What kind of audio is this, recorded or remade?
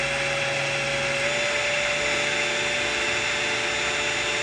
recorded